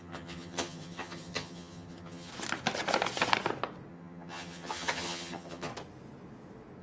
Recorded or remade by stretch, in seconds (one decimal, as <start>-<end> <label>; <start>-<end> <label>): 0.0-2.3 remade; 2.3-3.9 recorded; 3.9-5.7 remade; 5.7-6.8 recorded